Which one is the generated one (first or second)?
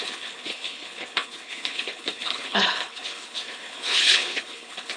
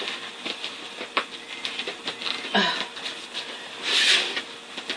first